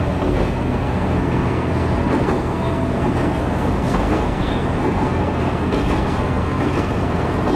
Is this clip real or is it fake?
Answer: fake